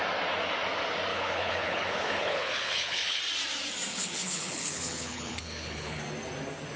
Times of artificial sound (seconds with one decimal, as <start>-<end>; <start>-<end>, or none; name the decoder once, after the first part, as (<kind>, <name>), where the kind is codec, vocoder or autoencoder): 1.1-3.2 (codec, HILCodec); 3.9-6.0